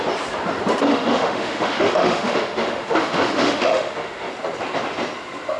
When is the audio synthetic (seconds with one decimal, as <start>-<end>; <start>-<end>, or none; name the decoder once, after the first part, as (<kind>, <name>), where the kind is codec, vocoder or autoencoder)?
0.9-4.3 (autoencoder, DAC-VAE)